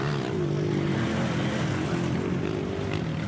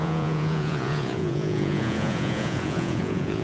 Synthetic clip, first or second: second